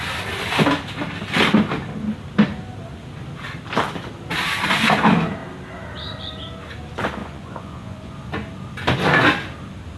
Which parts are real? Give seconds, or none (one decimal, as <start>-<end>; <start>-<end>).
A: 0.0-7.2; 8.1-10.0